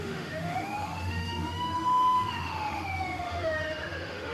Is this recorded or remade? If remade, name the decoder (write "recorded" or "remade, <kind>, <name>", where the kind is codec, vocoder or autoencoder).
remade, autoencoder, DAC-VAE